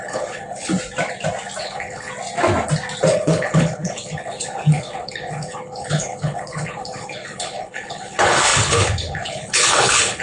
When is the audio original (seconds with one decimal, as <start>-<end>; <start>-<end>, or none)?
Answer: 0.7-1.6; 2.1-3.1